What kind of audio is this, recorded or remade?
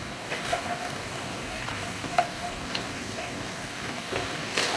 remade